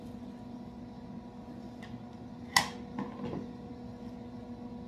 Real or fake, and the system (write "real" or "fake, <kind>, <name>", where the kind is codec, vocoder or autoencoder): real